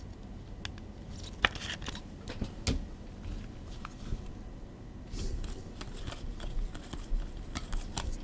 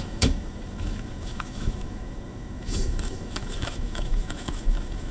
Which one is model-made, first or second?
second